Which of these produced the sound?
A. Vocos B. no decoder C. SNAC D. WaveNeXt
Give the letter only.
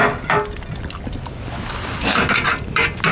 B